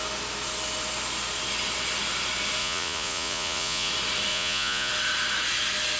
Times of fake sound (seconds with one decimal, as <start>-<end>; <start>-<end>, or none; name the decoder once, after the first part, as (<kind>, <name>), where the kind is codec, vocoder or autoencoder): 2.6-3.9 (vocoder, Vocos); 4.3-4.9